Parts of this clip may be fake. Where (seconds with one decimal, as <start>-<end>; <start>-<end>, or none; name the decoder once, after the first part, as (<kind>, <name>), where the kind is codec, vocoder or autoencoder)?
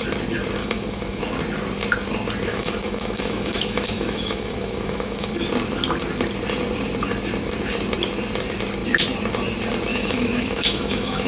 0.6-1.2 (autoencoder, DAC-VAE); 2.5-5.3; 9.9-11.3